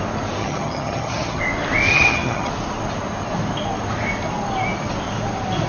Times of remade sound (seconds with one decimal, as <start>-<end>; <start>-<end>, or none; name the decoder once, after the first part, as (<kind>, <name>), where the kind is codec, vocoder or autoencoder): 0.4-1.4 (vocoder, HiFi-GAN); 1.9-2.5